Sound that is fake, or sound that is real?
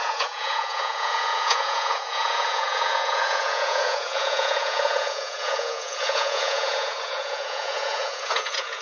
fake